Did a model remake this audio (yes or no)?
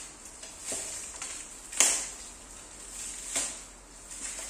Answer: no